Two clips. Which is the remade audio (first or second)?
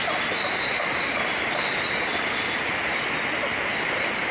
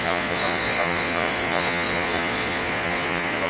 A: second